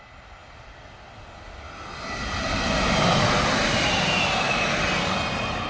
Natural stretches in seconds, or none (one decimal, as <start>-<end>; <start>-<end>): 0.0-5.7